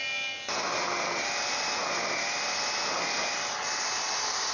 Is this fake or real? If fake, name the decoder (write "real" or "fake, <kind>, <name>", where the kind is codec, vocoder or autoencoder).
real